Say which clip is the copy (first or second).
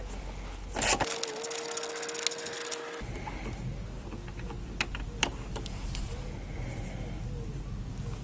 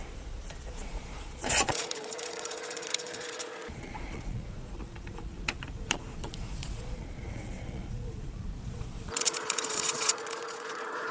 second